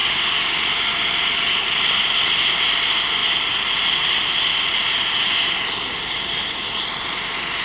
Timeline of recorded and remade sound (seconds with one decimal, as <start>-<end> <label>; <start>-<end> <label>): 0.0-7.6 recorded